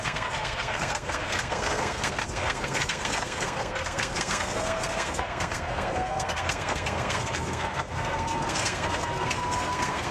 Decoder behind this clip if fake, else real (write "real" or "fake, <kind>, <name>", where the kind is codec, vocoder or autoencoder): fake, codec, SNAC